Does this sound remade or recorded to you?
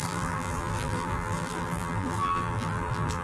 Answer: remade